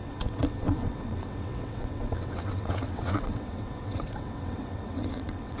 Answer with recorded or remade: remade